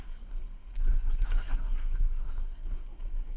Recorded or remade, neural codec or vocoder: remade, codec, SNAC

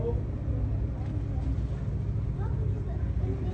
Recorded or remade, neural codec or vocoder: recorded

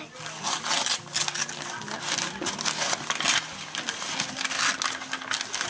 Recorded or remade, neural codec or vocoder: recorded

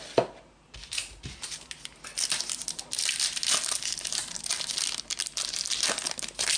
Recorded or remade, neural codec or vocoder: recorded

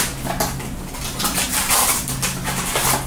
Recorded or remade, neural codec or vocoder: recorded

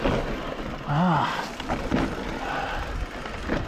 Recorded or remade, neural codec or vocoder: recorded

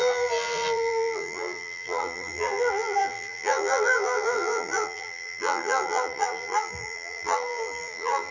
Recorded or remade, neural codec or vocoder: remade, vocoder, BigVGAN v2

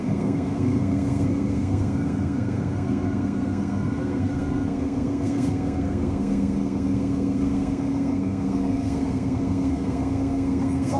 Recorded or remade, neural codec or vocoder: remade, codec, SNAC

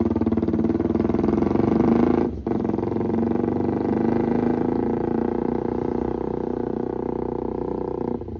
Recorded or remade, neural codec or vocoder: recorded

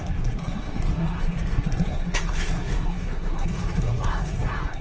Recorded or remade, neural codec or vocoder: remade, codec, SNAC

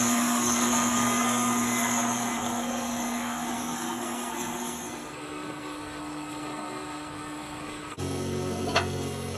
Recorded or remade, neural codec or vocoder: remade, codec, SNAC